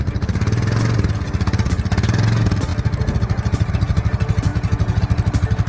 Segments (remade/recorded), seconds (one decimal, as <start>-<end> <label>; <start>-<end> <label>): 0.0-4.5 recorded; 4.5-5.0 remade; 5.0-5.7 recorded